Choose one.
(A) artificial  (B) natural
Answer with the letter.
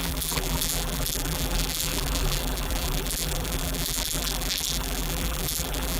A